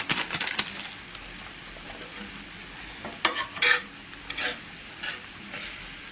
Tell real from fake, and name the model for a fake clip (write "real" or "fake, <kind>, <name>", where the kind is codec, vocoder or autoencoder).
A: real